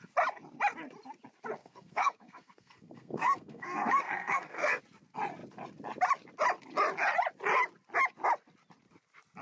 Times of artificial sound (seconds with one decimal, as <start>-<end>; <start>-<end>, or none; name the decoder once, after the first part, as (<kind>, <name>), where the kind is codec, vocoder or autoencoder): 1.6-4.8 (codec, SNAC)